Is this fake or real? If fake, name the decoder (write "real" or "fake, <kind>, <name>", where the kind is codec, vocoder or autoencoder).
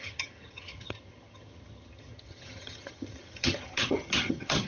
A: fake, vocoder, HiFi-GAN